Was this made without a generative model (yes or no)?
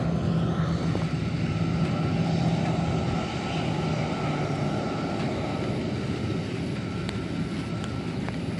yes